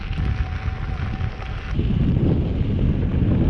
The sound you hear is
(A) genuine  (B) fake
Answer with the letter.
A